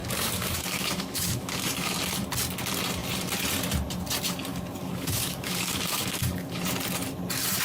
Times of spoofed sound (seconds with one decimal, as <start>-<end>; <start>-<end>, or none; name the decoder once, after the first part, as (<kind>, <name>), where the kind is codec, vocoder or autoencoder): 0.0-2.0 (codec, DAC); 4.5-6.6

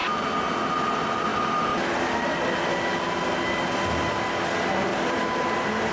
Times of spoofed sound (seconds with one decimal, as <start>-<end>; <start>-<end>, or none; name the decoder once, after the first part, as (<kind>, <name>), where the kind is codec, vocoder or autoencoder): 4.9-5.9 (vocoder, BigVGAN v2)

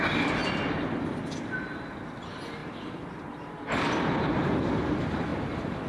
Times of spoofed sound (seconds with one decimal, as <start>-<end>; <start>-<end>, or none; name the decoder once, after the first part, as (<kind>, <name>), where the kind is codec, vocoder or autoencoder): 0.4-0.9 (vocoder, BigVGAN v2); 2.6-3.6

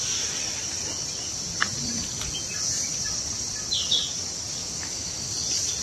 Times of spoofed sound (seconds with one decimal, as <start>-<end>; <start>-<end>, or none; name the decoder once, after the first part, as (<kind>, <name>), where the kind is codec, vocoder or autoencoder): 4.6-5.2 (autoencoder, DAC-VAE)

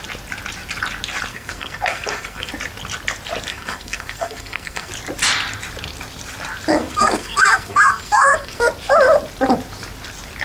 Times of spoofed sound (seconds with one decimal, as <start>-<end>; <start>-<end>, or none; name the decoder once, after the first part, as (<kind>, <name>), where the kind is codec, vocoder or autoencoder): 1.3-2.5 (codec, SNAC); 3.5-4.9; 6.7-8.7

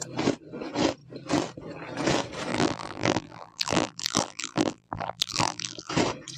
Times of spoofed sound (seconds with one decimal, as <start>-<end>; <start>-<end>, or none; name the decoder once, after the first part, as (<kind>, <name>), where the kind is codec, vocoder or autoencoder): 2.5-5.9 (vocoder, BigVGAN v2)

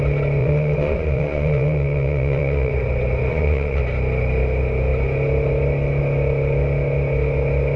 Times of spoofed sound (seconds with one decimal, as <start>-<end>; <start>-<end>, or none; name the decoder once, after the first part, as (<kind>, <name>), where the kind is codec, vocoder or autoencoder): 0.4-2.7 (vocoder, Vocos); 3.3-3.8

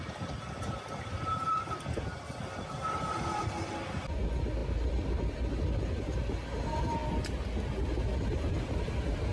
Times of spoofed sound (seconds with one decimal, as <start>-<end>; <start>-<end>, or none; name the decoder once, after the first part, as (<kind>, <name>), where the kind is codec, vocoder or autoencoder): none